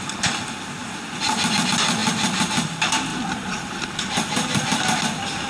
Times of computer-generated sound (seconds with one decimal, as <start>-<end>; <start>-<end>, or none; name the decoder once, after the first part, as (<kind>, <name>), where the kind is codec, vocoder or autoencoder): 0.8-1.4 (vocoder, BigVGAN v2); 3.1-5.5